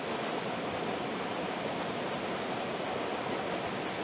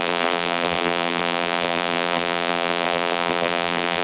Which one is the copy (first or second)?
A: second